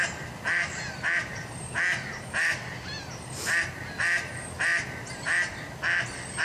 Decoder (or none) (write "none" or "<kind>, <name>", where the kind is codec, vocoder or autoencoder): none